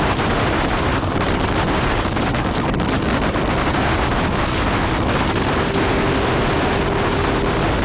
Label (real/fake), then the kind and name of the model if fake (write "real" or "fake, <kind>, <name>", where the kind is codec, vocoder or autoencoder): real